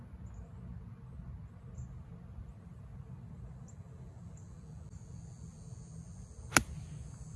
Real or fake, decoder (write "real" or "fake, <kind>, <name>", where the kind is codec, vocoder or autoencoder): real